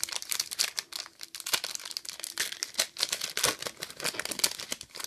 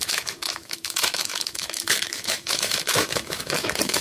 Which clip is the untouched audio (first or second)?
first